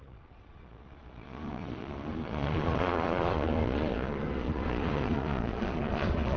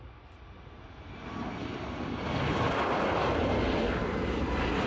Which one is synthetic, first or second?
first